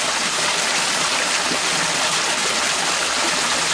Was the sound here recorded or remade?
recorded